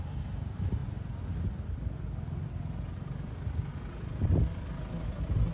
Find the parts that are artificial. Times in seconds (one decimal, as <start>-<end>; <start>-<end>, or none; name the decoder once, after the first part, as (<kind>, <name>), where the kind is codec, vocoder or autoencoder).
none